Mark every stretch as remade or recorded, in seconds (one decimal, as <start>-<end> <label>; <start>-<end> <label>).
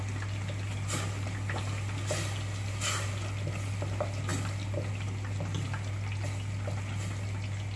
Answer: 0.0-7.8 recorded